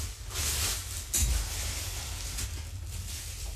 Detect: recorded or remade recorded